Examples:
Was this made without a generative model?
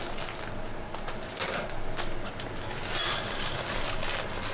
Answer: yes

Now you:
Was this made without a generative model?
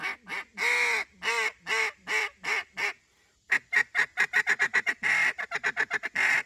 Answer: yes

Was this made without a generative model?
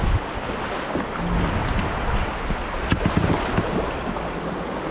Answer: yes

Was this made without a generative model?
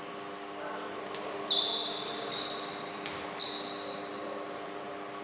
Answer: yes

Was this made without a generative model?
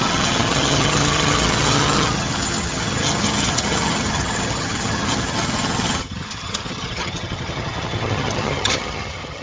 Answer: no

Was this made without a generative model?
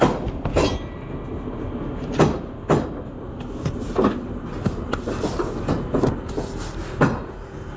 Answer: yes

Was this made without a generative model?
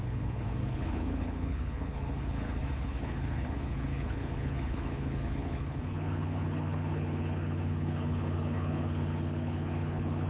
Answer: no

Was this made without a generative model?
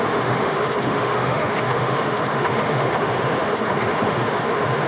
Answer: no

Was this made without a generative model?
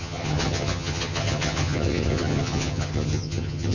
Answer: no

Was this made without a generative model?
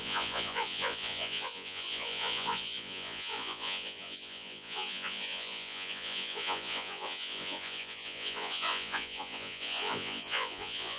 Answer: no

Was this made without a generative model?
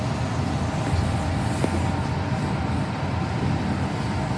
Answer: yes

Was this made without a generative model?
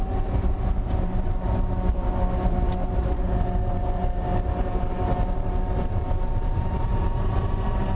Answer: no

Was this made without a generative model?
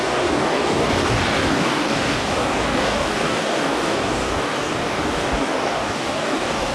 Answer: no